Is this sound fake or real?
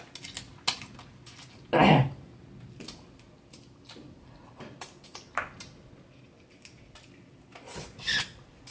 real